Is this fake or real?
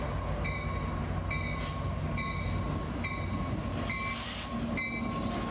real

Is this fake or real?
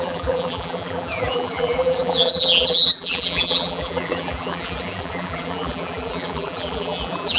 fake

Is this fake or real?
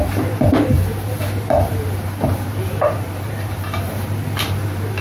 fake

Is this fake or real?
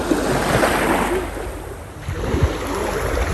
real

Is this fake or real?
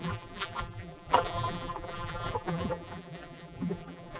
fake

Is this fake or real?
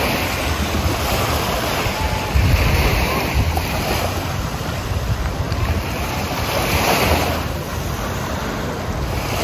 real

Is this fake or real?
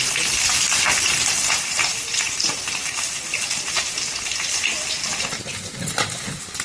real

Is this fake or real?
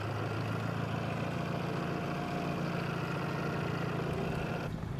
real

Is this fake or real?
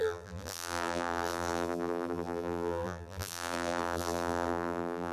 fake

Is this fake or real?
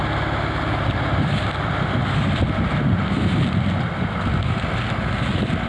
real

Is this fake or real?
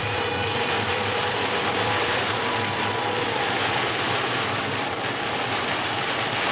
fake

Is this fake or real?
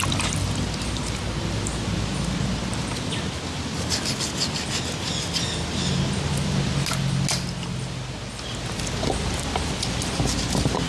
real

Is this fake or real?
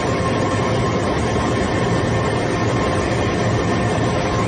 real